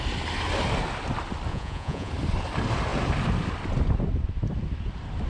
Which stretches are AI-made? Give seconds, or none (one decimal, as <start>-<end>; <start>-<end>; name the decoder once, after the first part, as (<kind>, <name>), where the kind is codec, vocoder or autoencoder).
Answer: 1.5-2.1 (vocoder, Vocos)